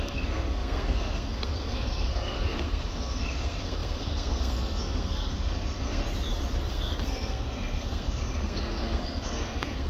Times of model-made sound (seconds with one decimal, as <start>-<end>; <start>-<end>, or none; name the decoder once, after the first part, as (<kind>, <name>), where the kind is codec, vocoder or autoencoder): 0.0-6.0 (codec, SNAC); 6.7-9.9

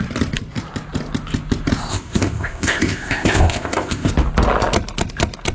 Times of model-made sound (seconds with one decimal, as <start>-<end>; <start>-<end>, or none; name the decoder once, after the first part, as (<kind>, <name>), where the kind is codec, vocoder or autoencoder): 1.9-4.1 (codec, ZipCodec)